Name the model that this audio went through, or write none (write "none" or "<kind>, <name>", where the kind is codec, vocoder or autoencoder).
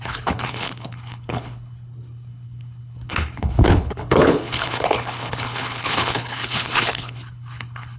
codec, HILCodec